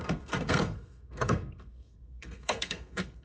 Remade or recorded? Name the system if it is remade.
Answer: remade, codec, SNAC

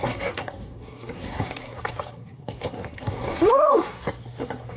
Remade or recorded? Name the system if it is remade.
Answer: remade, codec, SNAC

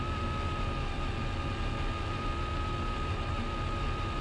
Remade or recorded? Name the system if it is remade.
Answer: recorded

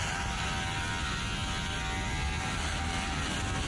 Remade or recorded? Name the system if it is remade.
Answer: recorded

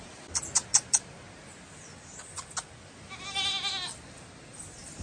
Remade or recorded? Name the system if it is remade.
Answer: recorded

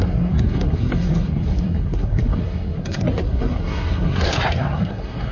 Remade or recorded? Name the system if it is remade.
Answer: remade, codec, SNAC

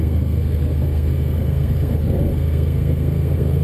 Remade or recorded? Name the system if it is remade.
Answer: remade, codec, SNAC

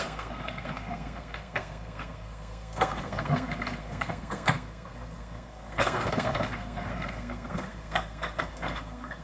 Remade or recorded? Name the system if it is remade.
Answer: remade, codec, SNAC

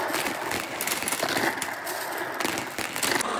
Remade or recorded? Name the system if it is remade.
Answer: recorded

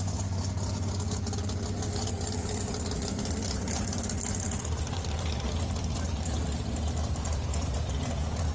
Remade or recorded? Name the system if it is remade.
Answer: recorded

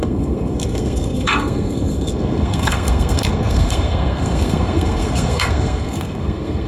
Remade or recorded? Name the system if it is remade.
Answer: remade, codec, SNAC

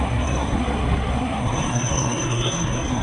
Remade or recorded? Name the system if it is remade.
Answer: remade, codec, SNAC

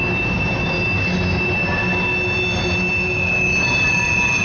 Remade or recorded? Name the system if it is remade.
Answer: recorded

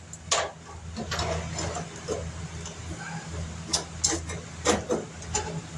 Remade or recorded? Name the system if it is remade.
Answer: recorded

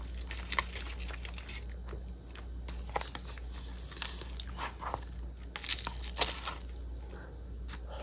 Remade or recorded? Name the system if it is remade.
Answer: recorded